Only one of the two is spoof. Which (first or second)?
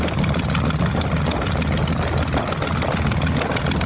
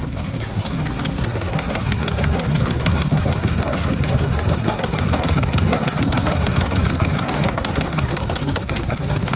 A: second